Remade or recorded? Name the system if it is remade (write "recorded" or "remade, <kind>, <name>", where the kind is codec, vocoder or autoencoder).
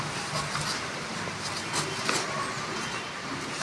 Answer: recorded